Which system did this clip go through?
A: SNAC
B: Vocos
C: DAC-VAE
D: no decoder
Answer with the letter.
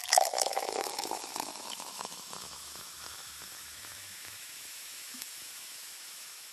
C